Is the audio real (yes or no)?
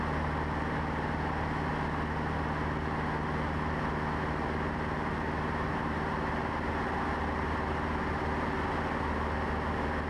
yes